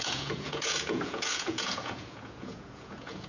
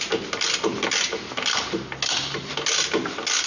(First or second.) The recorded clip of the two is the second